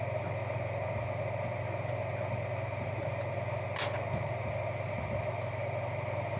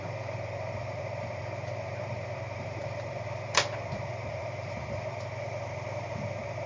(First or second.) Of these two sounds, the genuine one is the first